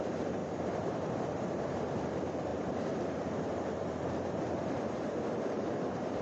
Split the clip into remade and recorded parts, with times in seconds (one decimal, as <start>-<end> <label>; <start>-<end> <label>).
0.0-6.2 remade